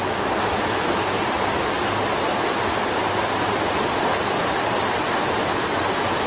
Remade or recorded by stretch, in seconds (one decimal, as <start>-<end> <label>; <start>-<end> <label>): 0.0-6.3 recorded